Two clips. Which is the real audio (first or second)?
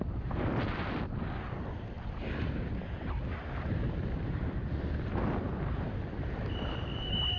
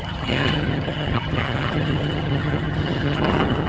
first